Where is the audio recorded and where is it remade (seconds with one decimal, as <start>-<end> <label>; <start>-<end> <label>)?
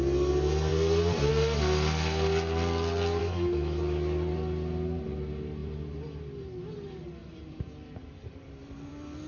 0.0-3.2 recorded; 3.2-3.8 remade; 3.8-9.3 recorded